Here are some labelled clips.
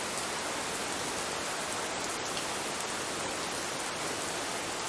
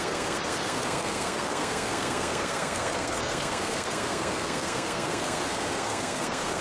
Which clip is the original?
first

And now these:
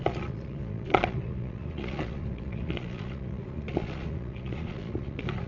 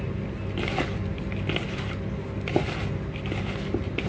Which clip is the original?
second